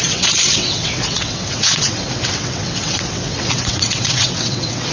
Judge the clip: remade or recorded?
remade